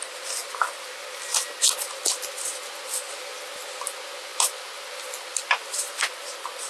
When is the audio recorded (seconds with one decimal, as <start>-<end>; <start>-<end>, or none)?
0.0-6.7